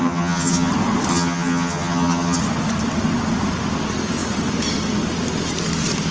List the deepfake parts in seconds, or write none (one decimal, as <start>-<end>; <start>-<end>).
0.0-0.7; 1.1-2.4